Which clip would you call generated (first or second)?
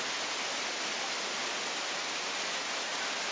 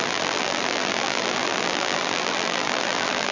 second